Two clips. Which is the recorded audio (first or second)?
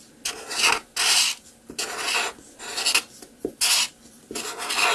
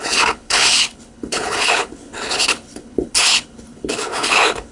first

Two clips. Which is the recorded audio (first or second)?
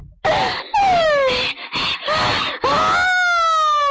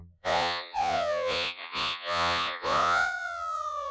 first